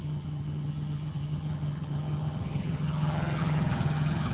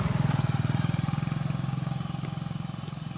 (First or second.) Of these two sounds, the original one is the second